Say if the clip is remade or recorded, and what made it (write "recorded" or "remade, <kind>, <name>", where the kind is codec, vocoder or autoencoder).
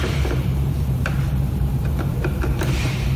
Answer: remade, vocoder, BigVGAN v2